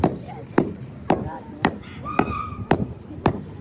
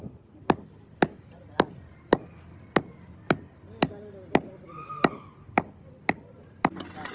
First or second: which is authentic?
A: second